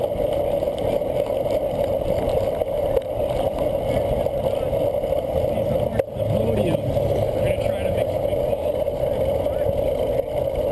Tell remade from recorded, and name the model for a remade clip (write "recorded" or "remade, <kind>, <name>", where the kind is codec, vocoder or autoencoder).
recorded